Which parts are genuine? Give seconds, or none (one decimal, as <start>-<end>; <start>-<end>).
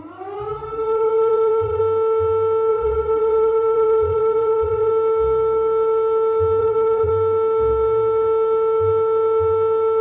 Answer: 0.0-0.5; 1.8-2.7; 4.9-6.6; 7.1-10.0